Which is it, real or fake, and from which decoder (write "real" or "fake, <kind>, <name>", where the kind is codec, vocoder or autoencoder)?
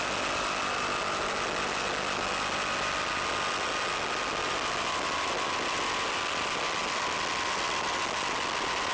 real